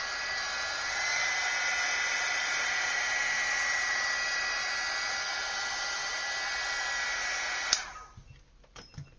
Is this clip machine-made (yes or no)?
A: no